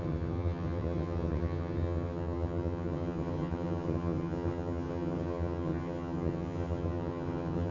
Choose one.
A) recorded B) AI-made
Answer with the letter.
B